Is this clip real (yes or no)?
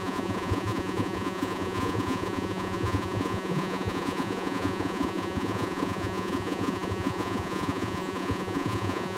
no